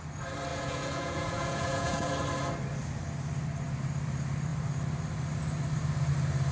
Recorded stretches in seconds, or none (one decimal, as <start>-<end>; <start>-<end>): 0.0-0.5; 2.1-6.5